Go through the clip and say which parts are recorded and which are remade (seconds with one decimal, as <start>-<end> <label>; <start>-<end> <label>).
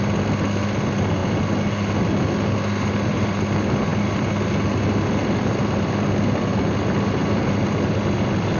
0.0-8.6 recorded